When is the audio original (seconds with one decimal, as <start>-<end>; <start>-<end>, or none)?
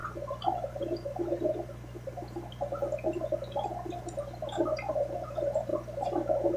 0.0-6.6